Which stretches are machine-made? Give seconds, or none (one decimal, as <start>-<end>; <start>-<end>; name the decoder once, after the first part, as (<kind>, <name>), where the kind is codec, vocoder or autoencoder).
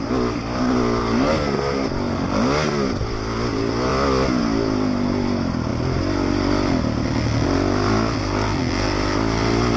none